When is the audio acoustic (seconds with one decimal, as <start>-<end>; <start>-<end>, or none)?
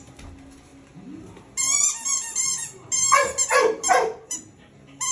0.0-5.1